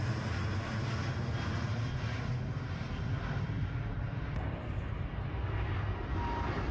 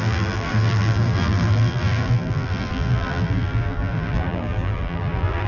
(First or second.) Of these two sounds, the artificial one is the second